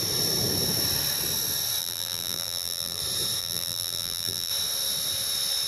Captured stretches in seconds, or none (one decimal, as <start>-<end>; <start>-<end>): 0.0-1.8; 3.0-3.4; 4.5-5.7